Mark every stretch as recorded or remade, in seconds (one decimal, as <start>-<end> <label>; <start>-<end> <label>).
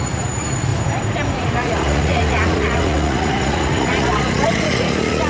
0.0-0.7 remade; 0.7-1.3 recorded; 1.3-5.3 remade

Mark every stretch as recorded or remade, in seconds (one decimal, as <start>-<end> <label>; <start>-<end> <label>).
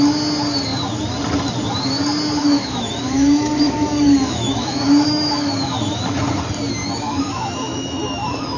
0.0-2.4 recorded; 2.4-5.8 remade; 5.8-6.8 recorded; 6.8-8.6 remade